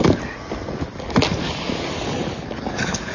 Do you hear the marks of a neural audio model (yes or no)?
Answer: no